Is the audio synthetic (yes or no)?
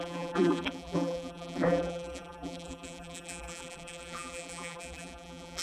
yes